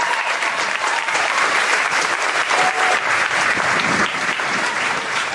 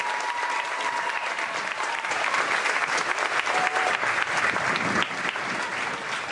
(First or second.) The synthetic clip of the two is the first